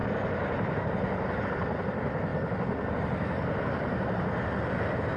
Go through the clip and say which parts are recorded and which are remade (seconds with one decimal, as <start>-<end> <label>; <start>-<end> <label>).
0.0-5.2 recorded